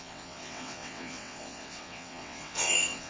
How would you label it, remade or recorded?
remade